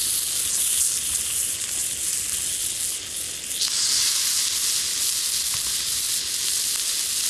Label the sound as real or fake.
real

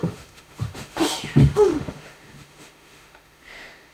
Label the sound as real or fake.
fake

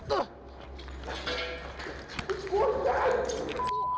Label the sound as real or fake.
real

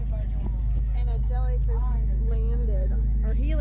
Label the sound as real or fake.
real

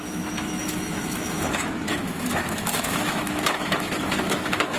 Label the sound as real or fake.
fake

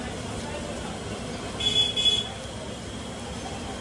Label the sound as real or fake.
real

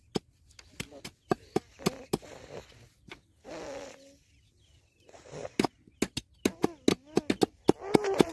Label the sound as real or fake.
real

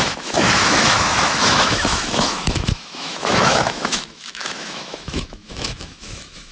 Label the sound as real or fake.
fake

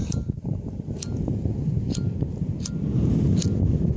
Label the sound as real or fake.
real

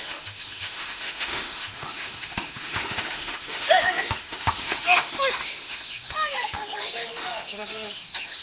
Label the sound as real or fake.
fake